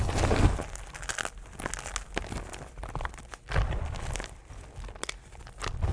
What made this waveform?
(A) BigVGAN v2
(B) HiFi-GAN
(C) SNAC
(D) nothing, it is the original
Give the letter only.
D